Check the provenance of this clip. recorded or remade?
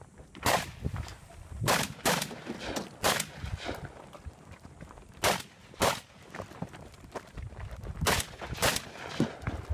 recorded